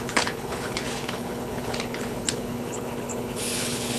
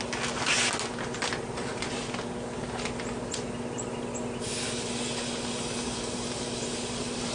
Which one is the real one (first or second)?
second